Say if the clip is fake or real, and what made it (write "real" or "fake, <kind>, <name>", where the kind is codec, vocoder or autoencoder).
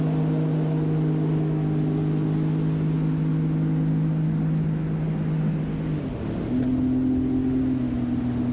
real